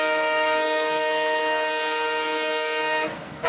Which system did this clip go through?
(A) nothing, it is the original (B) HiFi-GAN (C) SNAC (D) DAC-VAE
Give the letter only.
C